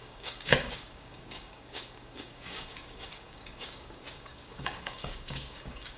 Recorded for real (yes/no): no